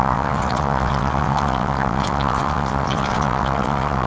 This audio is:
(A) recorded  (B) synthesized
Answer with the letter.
B